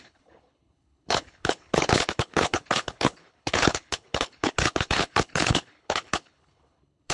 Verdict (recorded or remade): remade